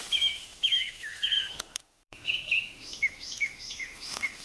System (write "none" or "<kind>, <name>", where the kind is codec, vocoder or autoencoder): autoencoder, DAC-VAE